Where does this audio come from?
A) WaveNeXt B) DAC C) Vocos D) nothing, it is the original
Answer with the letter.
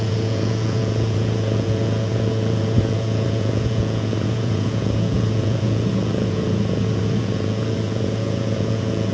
C